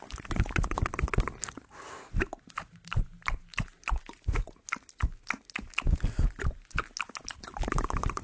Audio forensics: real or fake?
real